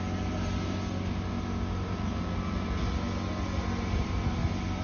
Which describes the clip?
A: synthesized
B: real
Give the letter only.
B